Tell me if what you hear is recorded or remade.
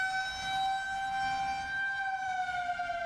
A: recorded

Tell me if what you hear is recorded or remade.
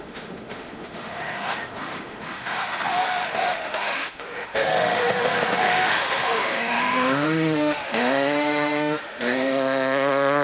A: remade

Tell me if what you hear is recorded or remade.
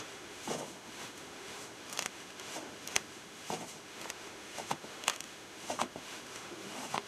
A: remade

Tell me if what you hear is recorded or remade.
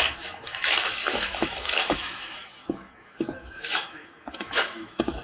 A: remade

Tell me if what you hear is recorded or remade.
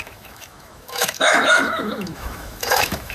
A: remade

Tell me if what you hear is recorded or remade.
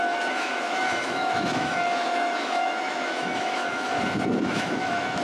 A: remade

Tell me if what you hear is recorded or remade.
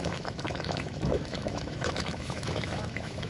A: remade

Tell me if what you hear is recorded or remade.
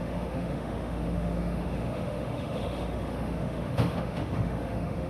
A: remade